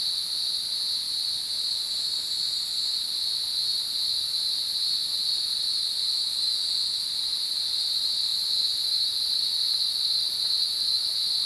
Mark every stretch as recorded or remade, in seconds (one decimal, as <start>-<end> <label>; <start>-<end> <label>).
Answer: 0.0-11.5 recorded

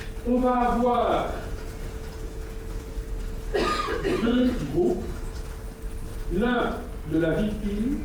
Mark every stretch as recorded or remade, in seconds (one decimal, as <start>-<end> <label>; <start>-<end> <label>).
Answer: 0.0-0.4 recorded; 0.4-2.5 remade; 2.5-3.9 recorded; 3.9-5.0 remade; 5.0-6.1 recorded; 6.1-6.6 remade; 6.6-8.0 recorded

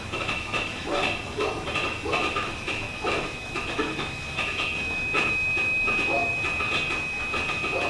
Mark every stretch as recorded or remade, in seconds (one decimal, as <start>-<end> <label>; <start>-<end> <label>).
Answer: 0.0-1.0 remade; 1.0-2.3 recorded; 2.3-6.3 remade; 6.3-7.9 recorded